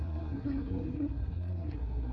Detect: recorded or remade remade